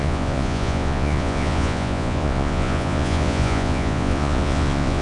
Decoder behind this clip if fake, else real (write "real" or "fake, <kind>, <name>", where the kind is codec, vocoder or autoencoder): fake, vocoder, Vocos